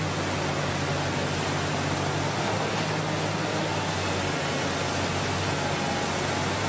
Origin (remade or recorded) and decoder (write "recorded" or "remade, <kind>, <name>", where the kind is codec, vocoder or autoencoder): recorded